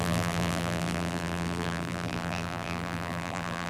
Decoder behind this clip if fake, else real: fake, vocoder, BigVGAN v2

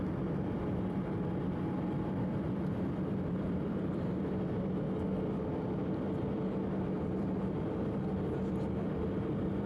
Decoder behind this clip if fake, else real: fake, vocoder, BigVGAN v2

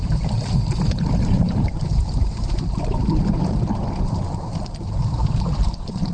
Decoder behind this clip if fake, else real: fake, vocoder, BigVGAN v2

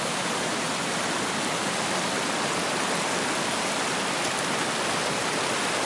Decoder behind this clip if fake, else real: real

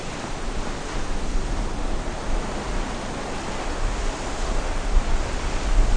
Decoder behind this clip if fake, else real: real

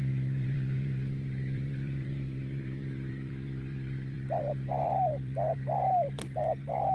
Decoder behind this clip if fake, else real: fake, vocoder, BigVGAN v2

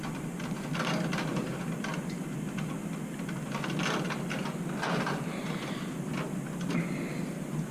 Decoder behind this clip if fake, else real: real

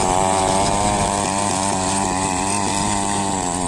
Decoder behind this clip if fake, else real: fake, vocoder, BigVGAN v2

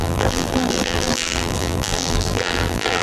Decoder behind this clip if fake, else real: fake, vocoder, BigVGAN v2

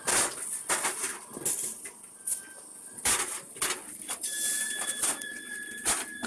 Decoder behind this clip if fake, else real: real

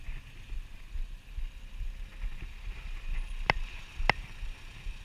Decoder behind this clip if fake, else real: real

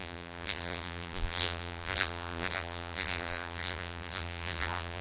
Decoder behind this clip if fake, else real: fake, vocoder, BigVGAN v2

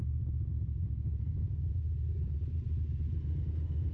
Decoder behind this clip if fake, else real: real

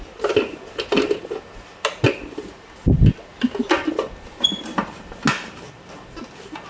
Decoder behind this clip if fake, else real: real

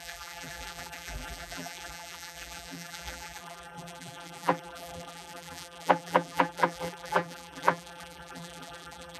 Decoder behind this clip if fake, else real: fake, vocoder, BigVGAN v2